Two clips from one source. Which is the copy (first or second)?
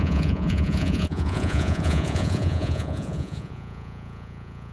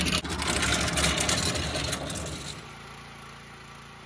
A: first